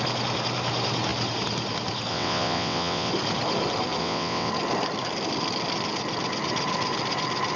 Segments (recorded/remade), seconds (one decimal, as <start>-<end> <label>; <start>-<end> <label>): 0.0-2.1 recorded; 2.1-3.1 remade; 3.1-4.0 recorded; 4.0-4.5 remade; 4.5-7.6 recorded